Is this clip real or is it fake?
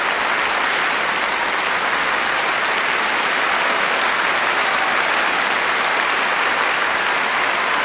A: real